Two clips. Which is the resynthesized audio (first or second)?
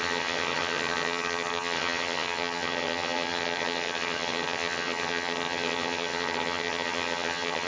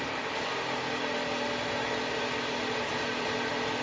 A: first